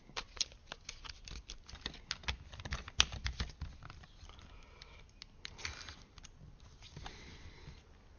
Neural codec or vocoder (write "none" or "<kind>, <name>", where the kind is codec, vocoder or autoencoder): none